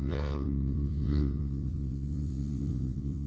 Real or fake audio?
fake